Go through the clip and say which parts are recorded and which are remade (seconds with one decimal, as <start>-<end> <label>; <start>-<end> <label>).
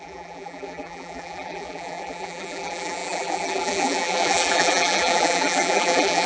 0.0-6.3 remade